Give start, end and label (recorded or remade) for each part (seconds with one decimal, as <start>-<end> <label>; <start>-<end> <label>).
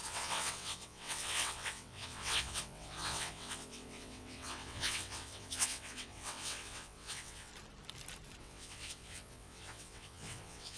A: 0.0-7.5 remade; 7.5-8.4 recorded; 8.4-10.8 remade